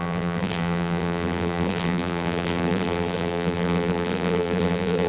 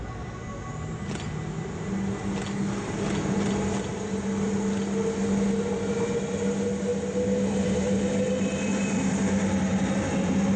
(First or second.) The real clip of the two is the second